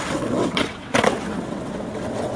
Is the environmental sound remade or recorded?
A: remade